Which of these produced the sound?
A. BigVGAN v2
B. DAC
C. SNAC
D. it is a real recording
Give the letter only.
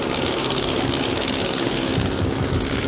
B